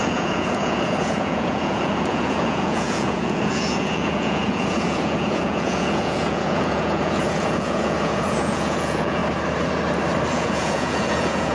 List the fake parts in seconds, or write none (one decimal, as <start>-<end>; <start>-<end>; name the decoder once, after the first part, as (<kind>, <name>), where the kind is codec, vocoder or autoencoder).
0.0-9.2 (vocoder, Vocos); 10.3-11.5